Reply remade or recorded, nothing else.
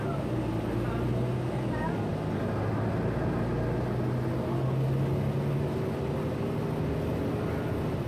recorded